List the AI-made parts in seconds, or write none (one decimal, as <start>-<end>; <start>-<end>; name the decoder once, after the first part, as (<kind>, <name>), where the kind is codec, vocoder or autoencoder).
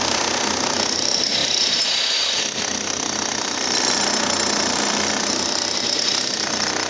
none